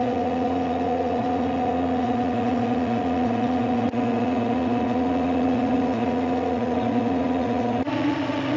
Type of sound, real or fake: fake